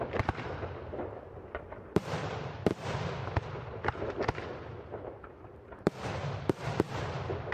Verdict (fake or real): fake